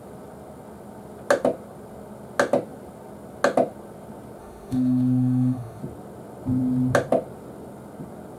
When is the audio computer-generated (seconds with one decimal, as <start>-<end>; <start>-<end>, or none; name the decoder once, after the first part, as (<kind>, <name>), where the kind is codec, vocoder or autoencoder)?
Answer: 4.4-5.8 (autoencoder, DAC-VAE)